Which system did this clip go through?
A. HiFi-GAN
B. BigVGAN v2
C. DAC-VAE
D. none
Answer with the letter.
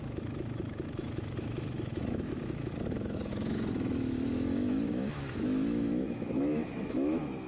C